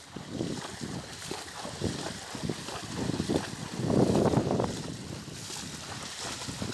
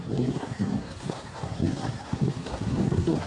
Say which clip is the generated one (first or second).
second